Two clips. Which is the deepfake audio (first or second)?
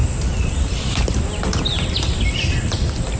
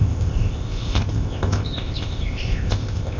second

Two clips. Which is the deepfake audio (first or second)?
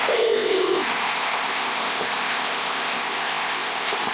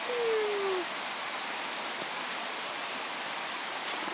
first